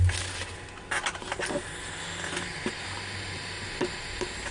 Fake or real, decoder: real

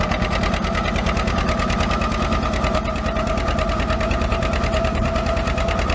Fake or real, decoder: real